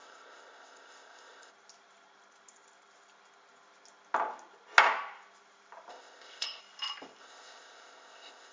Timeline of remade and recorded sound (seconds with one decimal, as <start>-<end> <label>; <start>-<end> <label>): 0.0-1.5 remade; 1.5-5.9 recorded; 5.9-6.6 remade; 6.6-7.2 recorded; 7.2-8.5 remade